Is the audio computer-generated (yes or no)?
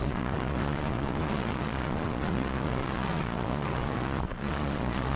yes